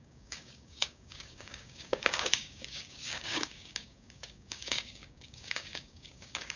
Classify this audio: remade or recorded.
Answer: remade